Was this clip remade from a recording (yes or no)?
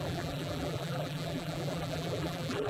yes